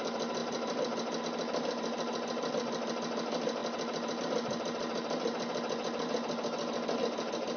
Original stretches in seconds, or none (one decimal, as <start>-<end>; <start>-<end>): 0.0-7.6